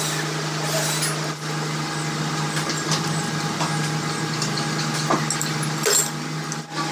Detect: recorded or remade recorded